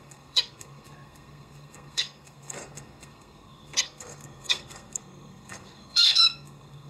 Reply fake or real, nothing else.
fake